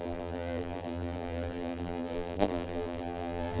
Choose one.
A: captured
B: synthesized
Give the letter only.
B